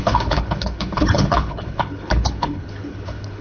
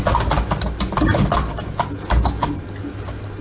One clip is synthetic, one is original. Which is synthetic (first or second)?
first